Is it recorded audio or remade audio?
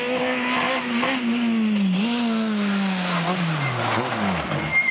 recorded